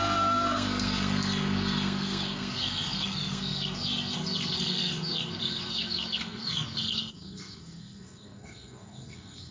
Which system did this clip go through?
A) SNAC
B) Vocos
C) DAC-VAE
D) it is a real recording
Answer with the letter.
A